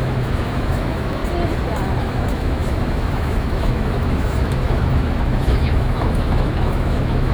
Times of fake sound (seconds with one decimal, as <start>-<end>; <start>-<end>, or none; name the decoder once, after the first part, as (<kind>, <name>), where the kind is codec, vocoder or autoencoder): 0.0-1.2 (autoencoder, DAC-VAE); 2.0-7.3